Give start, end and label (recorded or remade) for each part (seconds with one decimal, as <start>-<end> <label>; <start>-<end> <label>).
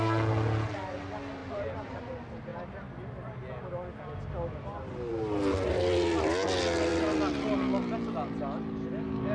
0.0-9.3 recorded